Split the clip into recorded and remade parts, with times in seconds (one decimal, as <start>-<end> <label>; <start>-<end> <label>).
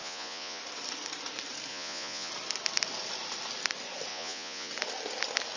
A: 0.0-0.6 remade; 0.6-1.7 recorded; 1.7-2.3 remade; 2.3-4.1 recorded; 4.1-4.7 remade; 4.7-5.6 recorded